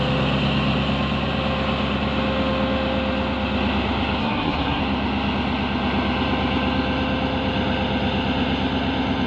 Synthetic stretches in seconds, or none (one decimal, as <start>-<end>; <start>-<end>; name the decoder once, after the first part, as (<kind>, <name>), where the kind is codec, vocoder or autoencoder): 4.2-4.8 (codec, SNAC)